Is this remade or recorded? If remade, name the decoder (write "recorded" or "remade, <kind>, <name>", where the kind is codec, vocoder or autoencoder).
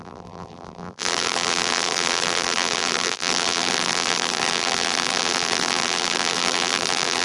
remade, vocoder, BigVGAN v2